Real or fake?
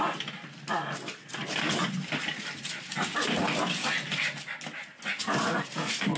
real